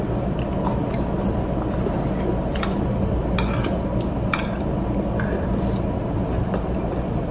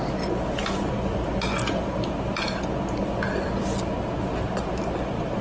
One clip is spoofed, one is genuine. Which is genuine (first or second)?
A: second